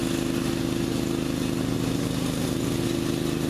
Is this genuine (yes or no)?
yes